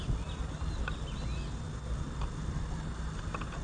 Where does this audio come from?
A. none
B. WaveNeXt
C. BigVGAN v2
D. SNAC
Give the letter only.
A